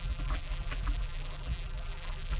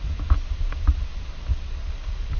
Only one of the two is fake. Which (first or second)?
first